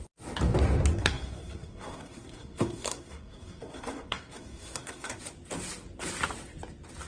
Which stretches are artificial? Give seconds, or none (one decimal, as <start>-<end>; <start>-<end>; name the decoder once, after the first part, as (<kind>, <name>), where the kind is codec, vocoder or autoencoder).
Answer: 0.9-5.2 (codec, SNAC)